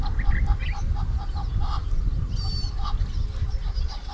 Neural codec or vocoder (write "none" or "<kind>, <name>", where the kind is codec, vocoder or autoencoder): none